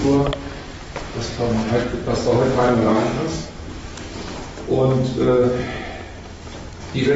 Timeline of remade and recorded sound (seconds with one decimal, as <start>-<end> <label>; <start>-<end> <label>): 0.0-2.9 recorded; 2.9-3.7 remade; 3.7-7.2 recorded